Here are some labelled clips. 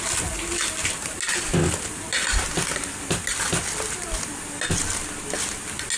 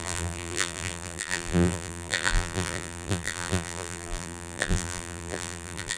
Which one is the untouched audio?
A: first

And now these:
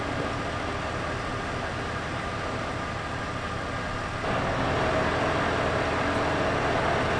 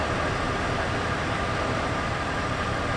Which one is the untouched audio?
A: first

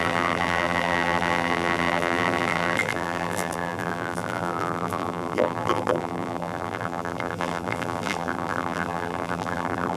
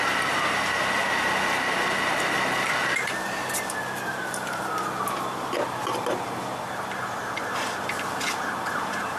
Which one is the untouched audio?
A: second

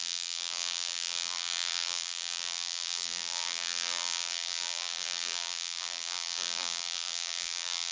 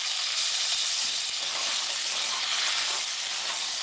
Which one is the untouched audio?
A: second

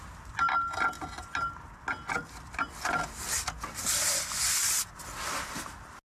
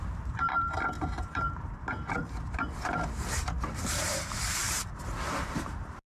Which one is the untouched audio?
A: first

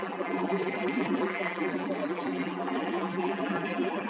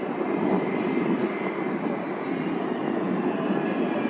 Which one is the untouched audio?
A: second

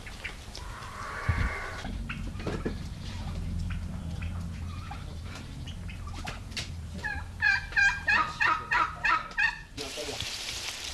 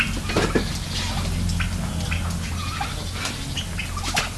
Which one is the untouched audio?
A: second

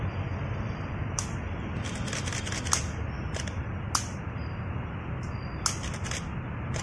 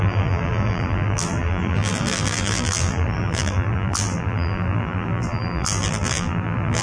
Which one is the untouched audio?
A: first